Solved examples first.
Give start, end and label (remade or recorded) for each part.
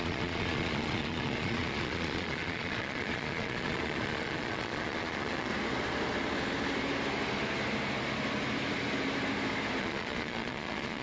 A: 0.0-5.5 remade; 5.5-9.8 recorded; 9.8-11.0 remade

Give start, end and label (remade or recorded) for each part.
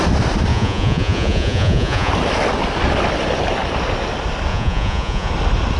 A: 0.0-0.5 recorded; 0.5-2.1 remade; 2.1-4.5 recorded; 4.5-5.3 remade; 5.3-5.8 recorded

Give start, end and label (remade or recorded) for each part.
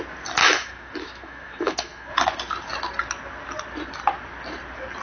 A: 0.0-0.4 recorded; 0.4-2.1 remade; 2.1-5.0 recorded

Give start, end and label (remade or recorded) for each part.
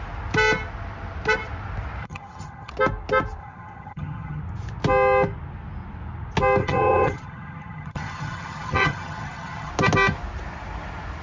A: 0.0-2.0 recorded; 2.0-2.7 remade; 2.7-3.4 recorded; 3.4-4.4 remade; 4.4-6.6 recorded; 6.6-9.7 remade; 9.7-11.2 recorded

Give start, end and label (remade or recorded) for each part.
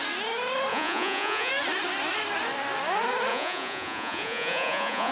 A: 0.0-0.7 recorded; 0.7-1.5 remade; 1.5-3.3 recorded; 3.3-5.1 remade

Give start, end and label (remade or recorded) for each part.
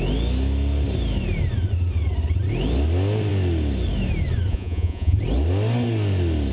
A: 0.0-4.5 recorded; 4.5-5.2 remade; 5.2-6.5 recorded